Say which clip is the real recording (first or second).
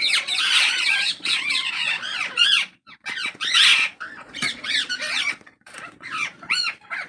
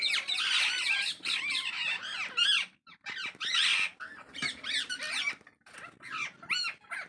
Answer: second